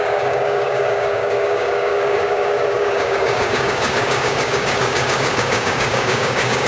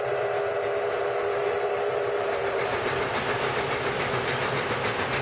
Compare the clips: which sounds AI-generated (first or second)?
first